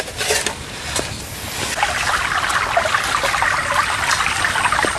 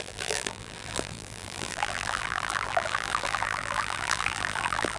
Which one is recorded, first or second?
first